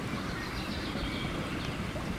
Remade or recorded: recorded